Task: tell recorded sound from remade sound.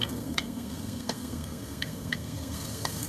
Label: remade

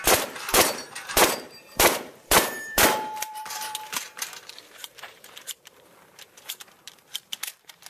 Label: remade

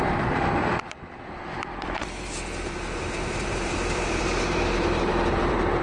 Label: remade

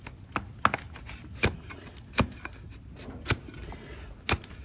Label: recorded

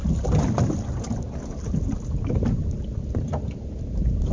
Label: recorded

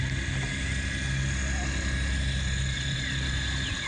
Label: recorded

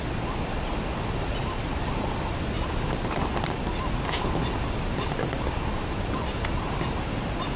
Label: recorded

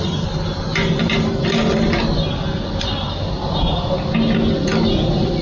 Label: recorded